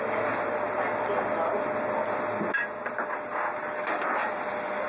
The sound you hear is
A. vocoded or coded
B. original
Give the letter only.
B